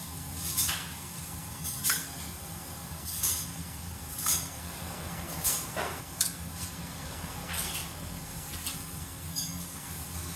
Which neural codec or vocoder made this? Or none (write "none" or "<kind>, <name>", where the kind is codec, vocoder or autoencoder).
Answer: codec, SNAC